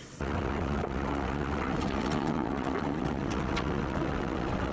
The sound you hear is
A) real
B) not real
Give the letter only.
B